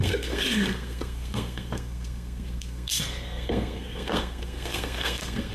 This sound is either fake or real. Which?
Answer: fake